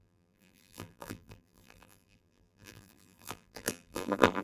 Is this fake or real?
fake